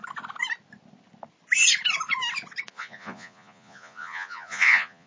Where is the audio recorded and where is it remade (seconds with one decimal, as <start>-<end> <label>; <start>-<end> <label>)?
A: 0.0-2.7 recorded; 2.7-5.1 remade

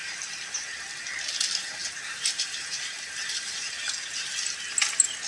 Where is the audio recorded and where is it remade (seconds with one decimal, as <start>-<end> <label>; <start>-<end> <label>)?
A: 0.0-0.6 remade; 0.6-1.8 recorded; 1.8-3.9 remade; 3.9-5.3 recorded

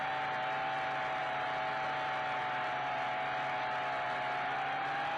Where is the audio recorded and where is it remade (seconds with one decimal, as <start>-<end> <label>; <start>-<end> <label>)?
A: 0.0-5.2 recorded

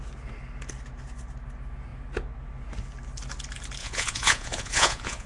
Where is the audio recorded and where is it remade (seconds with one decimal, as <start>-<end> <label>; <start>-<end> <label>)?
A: 0.0-3.8 recorded; 3.8-5.3 remade

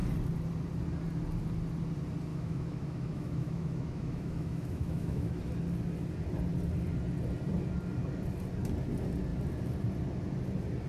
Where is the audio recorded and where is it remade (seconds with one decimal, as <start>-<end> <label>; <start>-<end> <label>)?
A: 0.0-2.3 recorded; 2.3-5.4 remade; 5.4-10.9 recorded

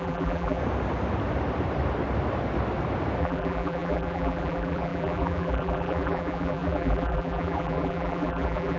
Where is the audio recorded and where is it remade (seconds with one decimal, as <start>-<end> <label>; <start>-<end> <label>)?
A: 0.0-0.6 remade; 0.6-3.2 recorded; 3.2-8.8 remade